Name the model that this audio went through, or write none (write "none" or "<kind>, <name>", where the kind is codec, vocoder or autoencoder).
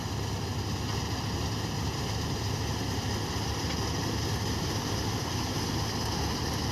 none